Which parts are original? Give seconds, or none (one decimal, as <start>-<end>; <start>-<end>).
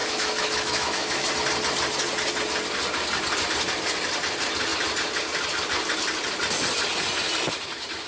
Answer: 1.3-8.1